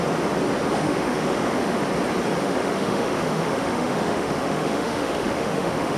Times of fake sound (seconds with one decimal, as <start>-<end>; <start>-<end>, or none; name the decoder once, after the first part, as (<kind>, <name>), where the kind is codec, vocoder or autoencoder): 0.7-1.8 (autoencoder, DAC-VAE); 2.4-6.0